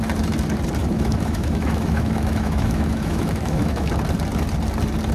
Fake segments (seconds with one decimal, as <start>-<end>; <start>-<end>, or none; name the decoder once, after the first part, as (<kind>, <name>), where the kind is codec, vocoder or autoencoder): 0.8-3.9 (autoencoder, DAC-VAE)